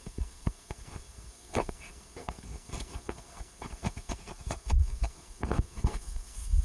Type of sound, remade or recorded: remade